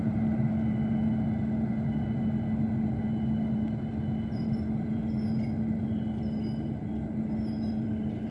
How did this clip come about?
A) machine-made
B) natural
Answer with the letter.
B